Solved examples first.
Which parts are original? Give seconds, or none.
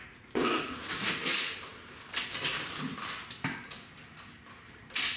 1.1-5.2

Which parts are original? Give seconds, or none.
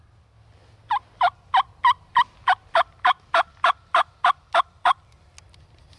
0.0-6.0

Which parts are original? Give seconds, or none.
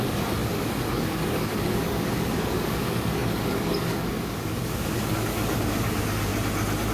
6.3-6.9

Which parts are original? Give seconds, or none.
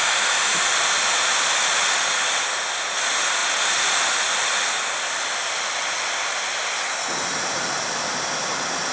0.0-8.9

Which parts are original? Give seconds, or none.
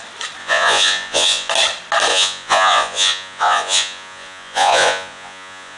0.0-0.4; 1.5-2.1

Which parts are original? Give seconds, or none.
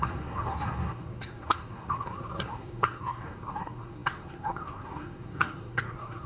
none